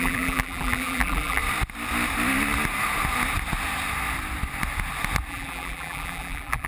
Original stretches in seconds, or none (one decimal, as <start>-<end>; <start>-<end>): 1.4-5.3